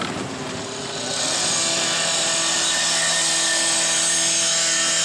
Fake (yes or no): no